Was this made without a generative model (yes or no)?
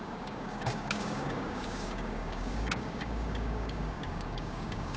no